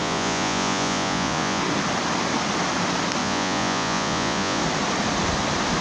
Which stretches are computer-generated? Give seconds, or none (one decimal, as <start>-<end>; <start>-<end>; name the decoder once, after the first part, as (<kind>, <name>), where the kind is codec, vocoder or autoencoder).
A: 0.0-1.6 (vocoder, Vocos); 3.2-4.6